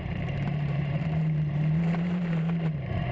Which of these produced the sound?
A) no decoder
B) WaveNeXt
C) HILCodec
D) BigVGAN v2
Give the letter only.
D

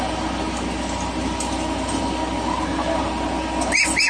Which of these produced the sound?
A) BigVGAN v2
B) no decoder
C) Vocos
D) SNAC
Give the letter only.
B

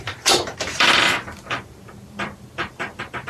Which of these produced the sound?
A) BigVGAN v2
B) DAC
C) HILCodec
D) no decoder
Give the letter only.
A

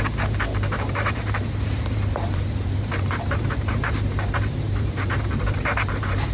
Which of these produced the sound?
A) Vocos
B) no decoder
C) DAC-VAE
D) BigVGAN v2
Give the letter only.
D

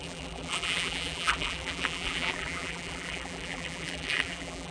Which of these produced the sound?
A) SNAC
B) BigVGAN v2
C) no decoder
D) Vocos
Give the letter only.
B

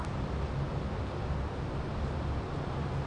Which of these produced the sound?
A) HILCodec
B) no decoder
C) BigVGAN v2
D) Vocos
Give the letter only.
B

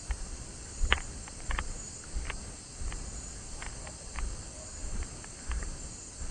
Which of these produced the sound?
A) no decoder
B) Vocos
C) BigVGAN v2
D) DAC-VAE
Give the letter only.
C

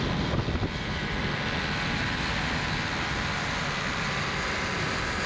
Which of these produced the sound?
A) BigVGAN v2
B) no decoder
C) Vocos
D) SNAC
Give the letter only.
B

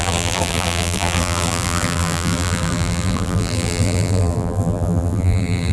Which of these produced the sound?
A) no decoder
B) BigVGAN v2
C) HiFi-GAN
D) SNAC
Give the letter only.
B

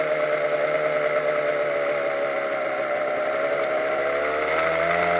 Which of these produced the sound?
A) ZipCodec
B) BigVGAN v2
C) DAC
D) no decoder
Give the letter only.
D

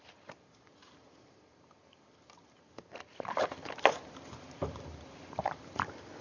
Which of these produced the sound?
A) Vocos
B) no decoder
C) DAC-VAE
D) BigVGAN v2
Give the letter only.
D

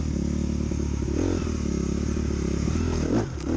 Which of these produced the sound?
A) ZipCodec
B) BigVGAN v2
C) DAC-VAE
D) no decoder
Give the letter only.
D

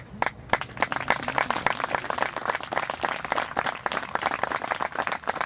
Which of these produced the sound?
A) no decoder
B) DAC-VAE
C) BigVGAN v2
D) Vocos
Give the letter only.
A